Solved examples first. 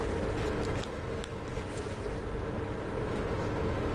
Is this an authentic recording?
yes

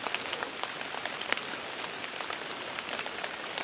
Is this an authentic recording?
no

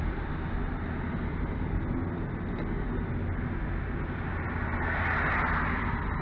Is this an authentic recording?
yes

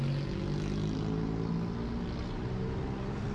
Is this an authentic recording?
yes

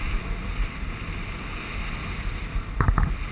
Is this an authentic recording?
no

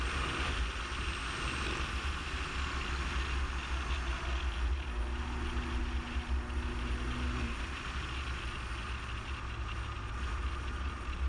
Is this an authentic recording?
yes